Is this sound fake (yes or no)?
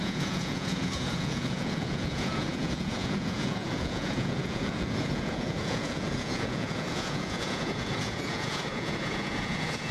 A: yes